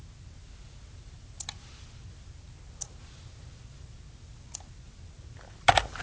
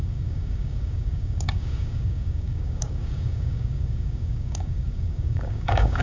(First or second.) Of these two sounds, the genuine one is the first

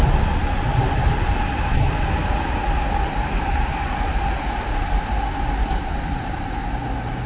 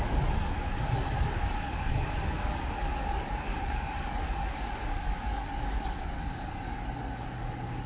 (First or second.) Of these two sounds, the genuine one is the first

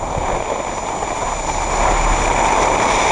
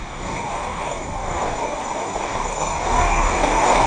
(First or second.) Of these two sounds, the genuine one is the first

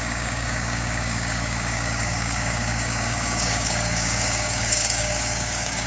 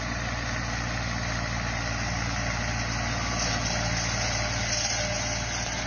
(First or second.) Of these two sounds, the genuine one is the second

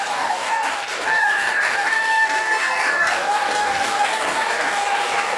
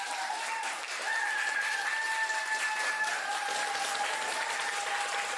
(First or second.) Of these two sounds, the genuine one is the second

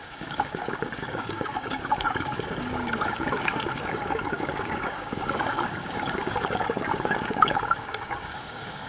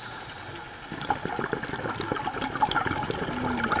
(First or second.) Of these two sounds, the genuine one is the second